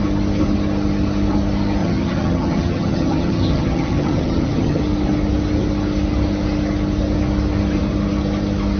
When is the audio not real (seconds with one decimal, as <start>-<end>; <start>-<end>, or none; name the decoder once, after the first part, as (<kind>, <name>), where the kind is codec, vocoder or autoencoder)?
1.8-4.8 (vocoder, HiFi-GAN)